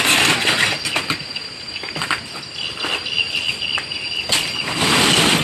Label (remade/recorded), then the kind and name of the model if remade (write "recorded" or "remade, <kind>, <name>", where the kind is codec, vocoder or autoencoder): recorded